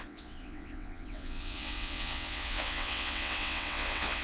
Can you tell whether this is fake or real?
fake